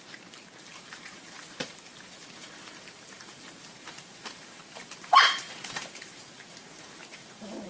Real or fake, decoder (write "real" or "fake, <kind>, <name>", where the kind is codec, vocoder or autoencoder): fake, vocoder, BigVGAN v2